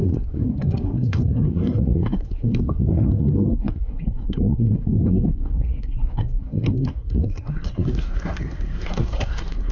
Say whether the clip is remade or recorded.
remade